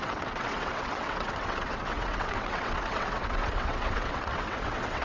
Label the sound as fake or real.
fake